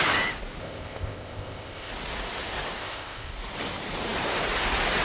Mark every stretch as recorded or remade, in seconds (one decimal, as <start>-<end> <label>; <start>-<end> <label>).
0.0-0.6 recorded; 0.6-1.9 remade; 1.9-2.8 recorded; 2.8-3.3 remade; 3.3-5.0 recorded